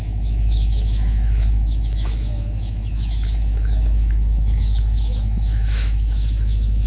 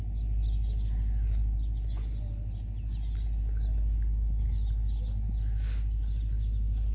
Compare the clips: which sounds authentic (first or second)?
second